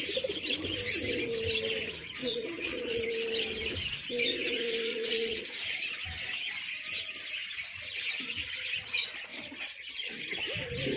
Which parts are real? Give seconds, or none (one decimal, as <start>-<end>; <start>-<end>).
0.0-2.2; 3.0-4.9; 5.4-9.3; 9.9-11.0